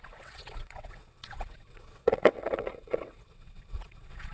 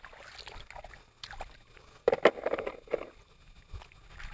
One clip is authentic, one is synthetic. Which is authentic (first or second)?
second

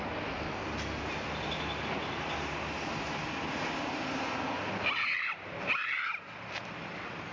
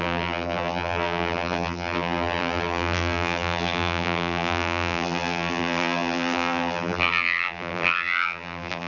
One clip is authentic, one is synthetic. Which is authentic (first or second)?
first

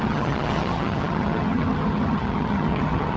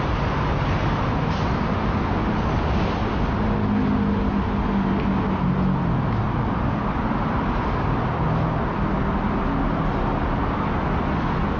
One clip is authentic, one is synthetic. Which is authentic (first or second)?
second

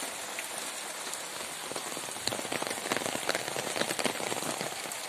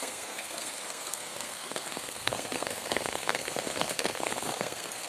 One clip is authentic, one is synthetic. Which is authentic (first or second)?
first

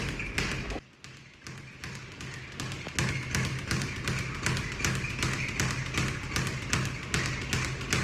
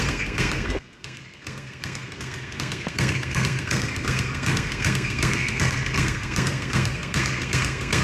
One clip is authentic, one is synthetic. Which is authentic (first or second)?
first